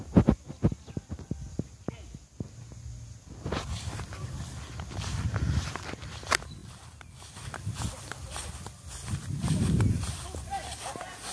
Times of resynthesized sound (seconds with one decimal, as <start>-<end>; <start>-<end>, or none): none